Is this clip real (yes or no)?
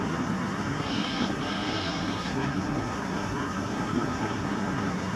no